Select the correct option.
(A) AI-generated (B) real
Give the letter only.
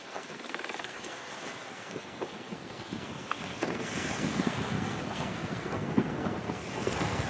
A